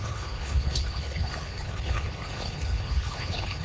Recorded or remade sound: remade